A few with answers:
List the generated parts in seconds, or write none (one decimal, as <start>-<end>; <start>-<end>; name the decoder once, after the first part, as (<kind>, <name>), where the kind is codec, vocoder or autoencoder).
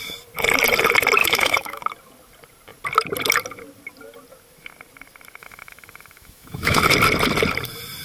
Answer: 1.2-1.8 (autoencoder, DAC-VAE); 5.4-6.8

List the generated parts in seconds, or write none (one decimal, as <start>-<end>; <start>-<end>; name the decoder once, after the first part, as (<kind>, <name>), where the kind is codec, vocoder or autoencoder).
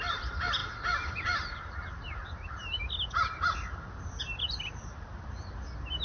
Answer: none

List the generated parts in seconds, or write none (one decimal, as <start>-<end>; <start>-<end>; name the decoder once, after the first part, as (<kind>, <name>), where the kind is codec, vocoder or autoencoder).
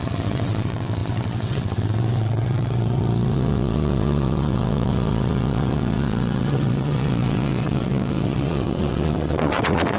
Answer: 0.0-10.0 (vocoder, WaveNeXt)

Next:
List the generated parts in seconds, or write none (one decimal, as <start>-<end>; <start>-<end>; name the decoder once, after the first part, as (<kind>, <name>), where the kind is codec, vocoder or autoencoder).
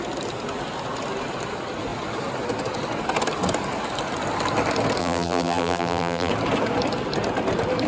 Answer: 5.0-6.3 (vocoder, BigVGAN v2)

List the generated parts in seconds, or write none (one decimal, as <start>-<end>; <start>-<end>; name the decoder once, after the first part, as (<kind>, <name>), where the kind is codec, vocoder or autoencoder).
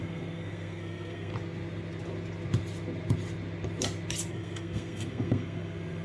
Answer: 0.0-1.3 (codec, SNAC); 4.3-6.0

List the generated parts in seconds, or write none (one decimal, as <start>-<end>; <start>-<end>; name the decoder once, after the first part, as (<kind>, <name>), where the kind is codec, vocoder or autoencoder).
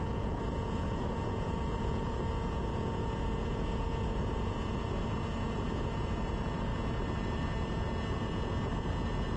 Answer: 0.0-9.4 (vocoder, Vocos)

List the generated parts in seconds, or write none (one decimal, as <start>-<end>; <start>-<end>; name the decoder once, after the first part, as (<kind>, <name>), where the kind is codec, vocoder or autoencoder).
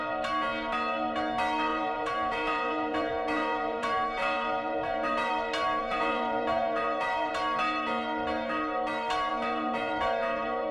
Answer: 1.7-5.3 (vocoder, Vocos); 5.8-7.3; 9.3-10.7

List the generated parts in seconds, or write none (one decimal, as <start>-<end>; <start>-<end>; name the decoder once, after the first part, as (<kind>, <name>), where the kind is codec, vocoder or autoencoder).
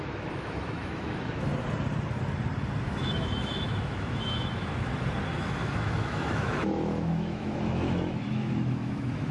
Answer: 0.0-1.5 (autoencoder, DAC-VAE); 2.8-4.9; 5.4-9.3